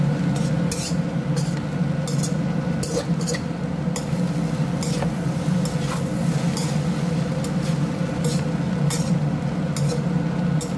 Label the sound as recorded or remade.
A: recorded